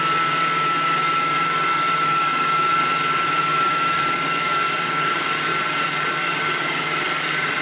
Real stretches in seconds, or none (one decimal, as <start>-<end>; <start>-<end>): 2.8-3.4; 5.5-6.1